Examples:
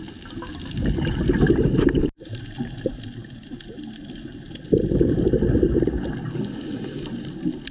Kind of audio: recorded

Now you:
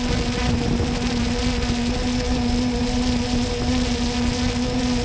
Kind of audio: recorded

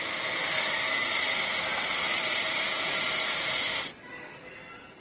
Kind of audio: recorded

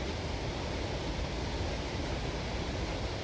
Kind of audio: remade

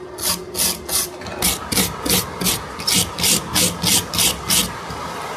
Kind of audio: recorded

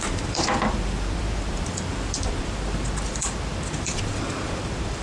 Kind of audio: remade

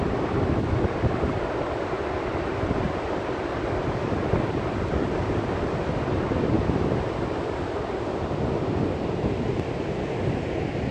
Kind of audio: recorded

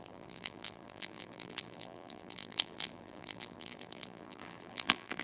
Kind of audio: remade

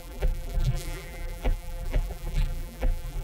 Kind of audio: remade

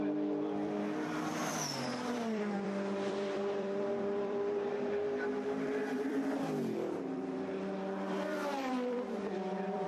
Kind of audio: remade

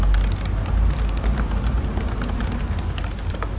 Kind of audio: recorded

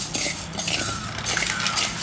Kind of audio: recorded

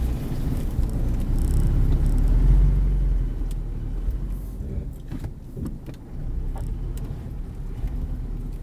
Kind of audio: recorded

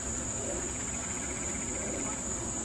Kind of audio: remade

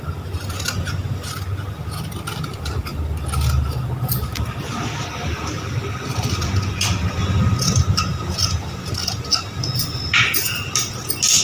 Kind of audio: recorded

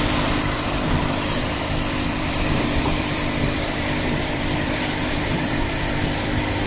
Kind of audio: remade